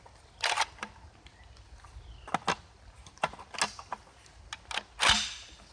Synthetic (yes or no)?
no